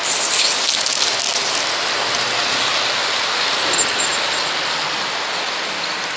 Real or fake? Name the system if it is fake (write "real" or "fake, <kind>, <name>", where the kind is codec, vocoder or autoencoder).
real